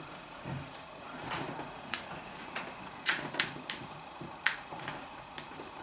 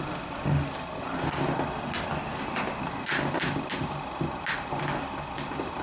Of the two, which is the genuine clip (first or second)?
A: second